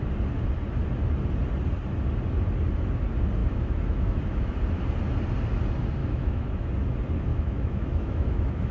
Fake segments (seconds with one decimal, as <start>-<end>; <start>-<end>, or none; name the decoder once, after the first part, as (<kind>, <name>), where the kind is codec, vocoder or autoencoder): 3.4-4.6 (autoencoder, DAC-VAE); 6.0-6.7; 7.3-8.7